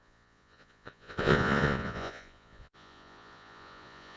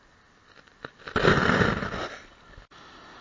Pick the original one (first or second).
second